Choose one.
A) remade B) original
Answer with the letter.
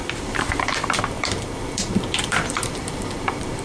A